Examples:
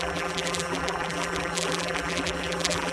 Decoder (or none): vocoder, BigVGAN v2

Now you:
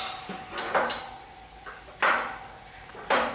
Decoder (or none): none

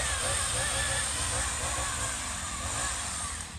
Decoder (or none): vocoder, BigVGAN v2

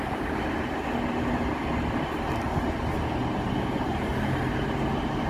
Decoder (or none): none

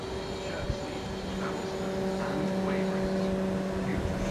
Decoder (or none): none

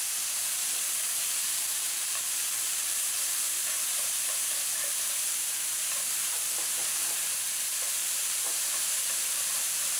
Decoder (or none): vocoder, BigVGAN v2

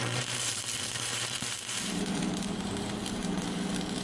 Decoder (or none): vocoder, BigVGAN v2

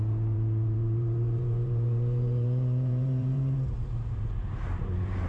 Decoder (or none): vocoder, BigVGAN v2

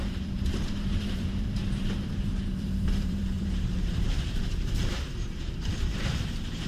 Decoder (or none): vocoder, BigVGAN v2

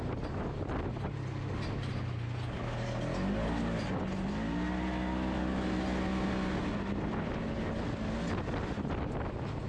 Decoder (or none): none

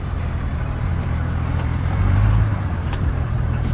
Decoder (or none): vocoder, BigVGAN v2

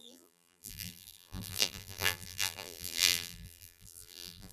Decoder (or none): vocoder, BigVGAN v2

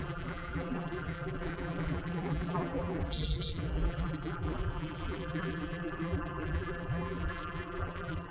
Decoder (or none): vocoder, BigVGAN v2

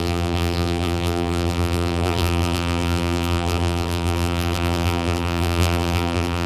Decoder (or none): vocoder, BigVGAN v2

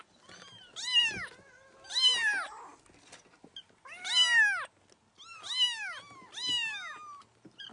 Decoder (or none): none